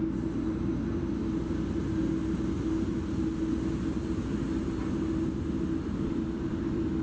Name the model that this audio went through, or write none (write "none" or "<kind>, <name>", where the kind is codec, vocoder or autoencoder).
none